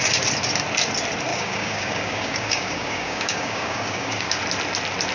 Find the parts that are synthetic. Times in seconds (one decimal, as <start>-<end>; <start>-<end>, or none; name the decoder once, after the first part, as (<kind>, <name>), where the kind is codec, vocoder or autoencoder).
1.3-4.4 (codec, DAC)

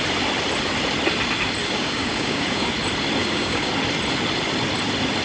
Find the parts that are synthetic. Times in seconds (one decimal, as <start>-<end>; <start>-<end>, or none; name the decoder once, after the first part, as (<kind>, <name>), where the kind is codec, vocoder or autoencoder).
1.6-2.7 (codec, DAC); 3.2-3.7

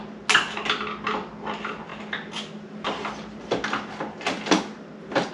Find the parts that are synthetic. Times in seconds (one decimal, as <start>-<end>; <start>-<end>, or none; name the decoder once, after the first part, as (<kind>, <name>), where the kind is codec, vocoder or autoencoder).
none

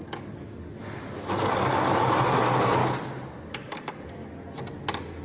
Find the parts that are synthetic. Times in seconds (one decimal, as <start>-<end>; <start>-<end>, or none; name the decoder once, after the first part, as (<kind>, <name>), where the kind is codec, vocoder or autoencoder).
0.0-0.8 (codec, DAC); 2.4-2.8; 3.5-4.2

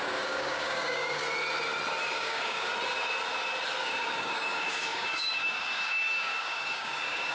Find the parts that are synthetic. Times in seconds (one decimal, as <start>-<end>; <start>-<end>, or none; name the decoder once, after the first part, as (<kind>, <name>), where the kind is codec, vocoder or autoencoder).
0.0-1.2 (codec, DAC); 2.0-2.7; 3.8-7.3

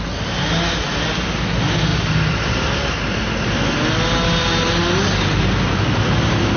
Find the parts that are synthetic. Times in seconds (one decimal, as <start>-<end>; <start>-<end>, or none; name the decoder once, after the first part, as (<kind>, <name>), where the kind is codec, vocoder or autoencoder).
none

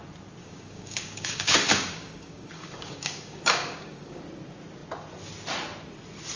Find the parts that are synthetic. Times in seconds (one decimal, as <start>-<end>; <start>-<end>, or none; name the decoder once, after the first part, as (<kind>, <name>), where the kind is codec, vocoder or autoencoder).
0.4-4.2 (codec, DAC)